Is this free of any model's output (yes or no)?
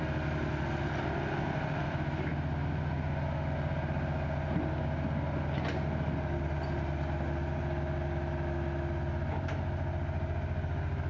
yes